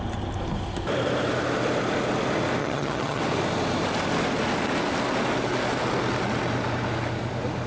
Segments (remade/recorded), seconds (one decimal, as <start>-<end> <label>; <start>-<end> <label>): 0.0-2.6 recorded; 2.6-3.2 remade; 3.2-7.7 recorded